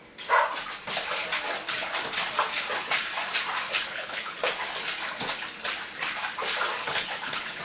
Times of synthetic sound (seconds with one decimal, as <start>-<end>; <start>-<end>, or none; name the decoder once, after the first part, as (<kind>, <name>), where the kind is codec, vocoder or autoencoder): 3.9-4.4 (codec, HILCodec); 6.8-7.6